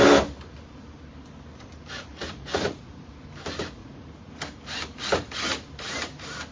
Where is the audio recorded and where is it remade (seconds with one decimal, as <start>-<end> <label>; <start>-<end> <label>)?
0.0-2.1 recorded; 2.1-3.1 remade; 3.1-3.8 recorded; 3.8-4.4 remade; 4.4-6.5 recorded